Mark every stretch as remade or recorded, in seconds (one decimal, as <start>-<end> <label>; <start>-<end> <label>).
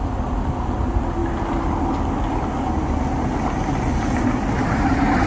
0.0-5.3 recorded